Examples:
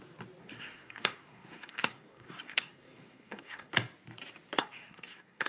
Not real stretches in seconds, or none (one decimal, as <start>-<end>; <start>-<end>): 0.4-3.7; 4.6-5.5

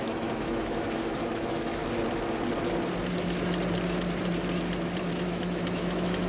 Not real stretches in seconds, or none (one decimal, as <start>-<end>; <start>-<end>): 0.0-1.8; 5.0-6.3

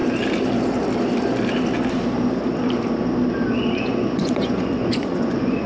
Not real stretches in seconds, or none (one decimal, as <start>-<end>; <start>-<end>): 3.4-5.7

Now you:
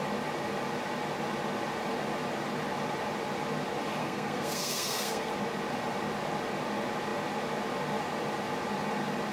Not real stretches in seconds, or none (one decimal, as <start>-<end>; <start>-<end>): 4.0-5.3

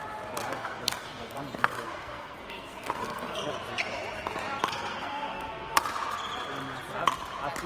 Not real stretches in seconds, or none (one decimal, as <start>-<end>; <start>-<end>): 0.5-3.5; 4.6-5.8

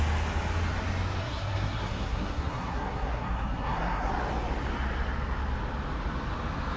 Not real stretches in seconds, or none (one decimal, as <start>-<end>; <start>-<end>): 1.2-4.1

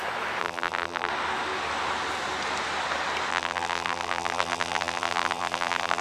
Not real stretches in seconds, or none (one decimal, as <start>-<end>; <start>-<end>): 0.4-1.1; 3.3-6.0

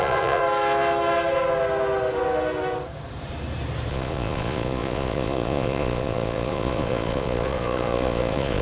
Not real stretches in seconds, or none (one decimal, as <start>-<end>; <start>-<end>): 0.0-0.4; 3.9-8.6